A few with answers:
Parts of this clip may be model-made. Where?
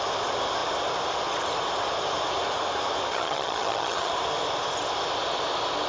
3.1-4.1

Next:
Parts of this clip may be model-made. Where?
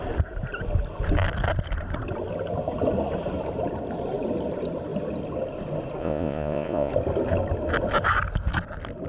6.0-6.9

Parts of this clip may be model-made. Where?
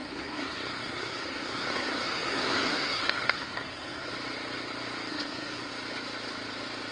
0.0-4.1; 5.1-5.7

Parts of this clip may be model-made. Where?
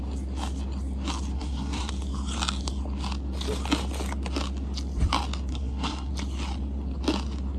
1.3-1.9; 5.5-6.1